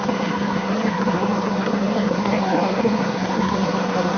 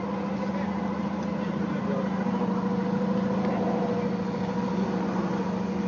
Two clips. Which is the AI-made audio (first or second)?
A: first